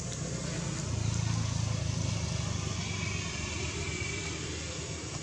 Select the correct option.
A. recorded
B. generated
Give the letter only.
A